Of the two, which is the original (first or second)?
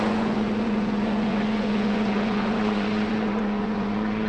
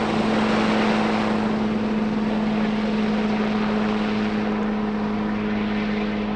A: second